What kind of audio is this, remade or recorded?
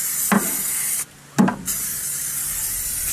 recorded